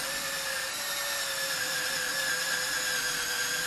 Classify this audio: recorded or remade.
recorded